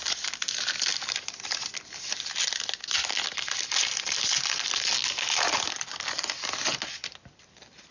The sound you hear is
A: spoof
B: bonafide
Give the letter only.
B